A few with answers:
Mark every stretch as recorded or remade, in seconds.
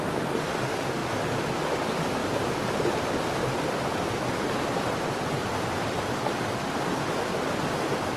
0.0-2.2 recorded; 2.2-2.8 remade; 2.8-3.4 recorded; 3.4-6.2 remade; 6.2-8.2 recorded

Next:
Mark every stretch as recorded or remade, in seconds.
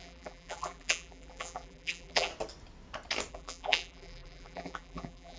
0.0-2.3 remade; 2.3-3.3 recorded; 3.3-5.4 remade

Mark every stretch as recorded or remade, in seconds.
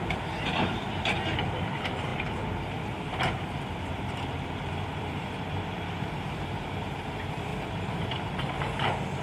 0.0-2.1 remade; 2.1-3.6 recorded; 3.6-9.2 remade